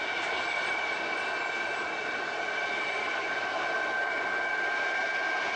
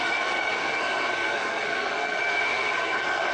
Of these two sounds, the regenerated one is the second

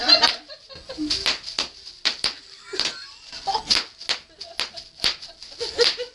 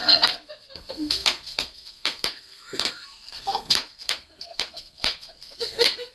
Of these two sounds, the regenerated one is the second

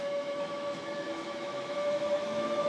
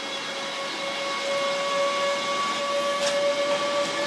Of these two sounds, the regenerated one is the first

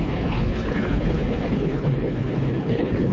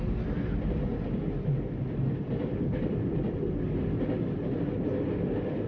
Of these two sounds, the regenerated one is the first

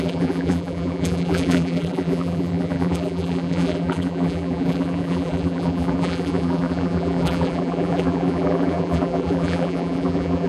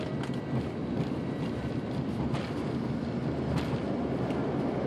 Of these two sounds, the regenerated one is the first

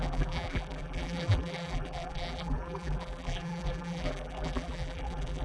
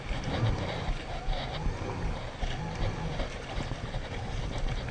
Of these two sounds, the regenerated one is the first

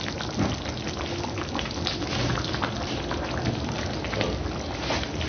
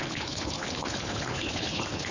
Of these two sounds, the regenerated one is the second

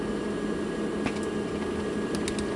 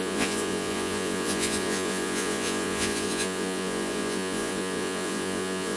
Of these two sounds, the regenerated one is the second